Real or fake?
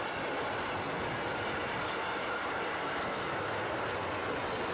real